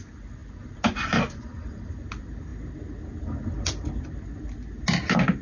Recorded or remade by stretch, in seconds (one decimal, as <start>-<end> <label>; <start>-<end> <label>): 0.0-5.4 recorded